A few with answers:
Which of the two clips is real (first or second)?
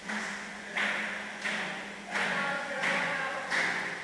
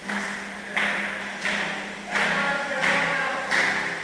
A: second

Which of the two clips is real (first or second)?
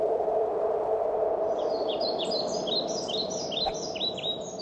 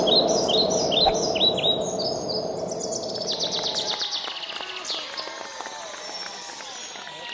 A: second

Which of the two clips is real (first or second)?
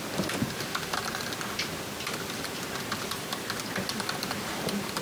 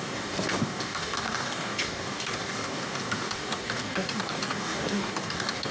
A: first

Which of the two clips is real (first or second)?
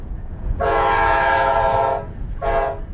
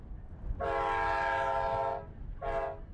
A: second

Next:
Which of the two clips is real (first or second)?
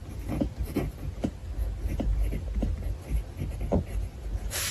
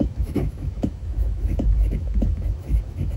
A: first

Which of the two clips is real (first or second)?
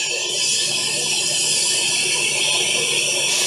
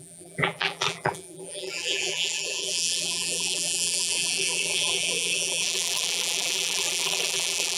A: first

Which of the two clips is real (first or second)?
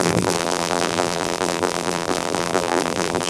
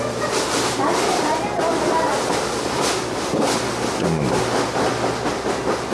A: second